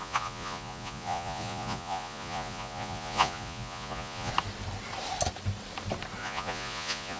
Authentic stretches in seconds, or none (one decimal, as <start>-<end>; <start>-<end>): 4.3-6.2